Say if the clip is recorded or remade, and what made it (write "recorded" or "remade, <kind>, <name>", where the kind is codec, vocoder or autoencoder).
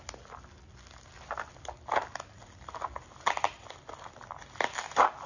recorded